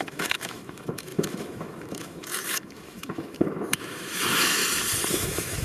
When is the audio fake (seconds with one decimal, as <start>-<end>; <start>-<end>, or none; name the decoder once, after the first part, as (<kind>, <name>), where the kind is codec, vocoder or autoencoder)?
0.0-4.6 (autoencoder, DAC-VAE); 5.1-5.6